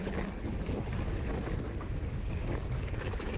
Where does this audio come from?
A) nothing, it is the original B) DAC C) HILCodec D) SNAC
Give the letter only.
B